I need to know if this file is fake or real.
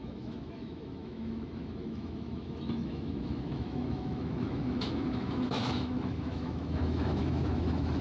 fake